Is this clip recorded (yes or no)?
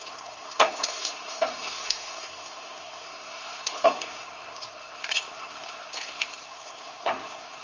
no